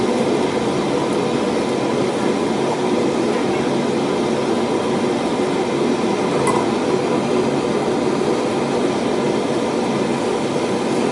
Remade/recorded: recorded